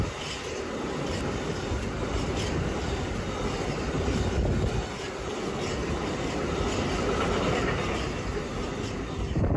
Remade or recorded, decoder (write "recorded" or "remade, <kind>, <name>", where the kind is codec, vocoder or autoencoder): recorded